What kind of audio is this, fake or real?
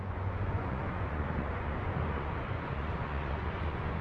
fake